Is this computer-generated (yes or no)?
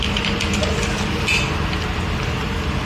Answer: no